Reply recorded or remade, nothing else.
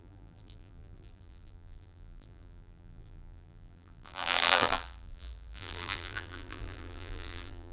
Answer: remade